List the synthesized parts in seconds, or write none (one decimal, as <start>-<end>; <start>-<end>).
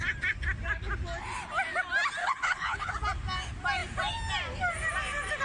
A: 2.2-2.9